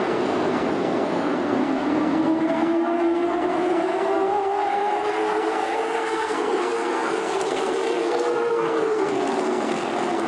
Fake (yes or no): yes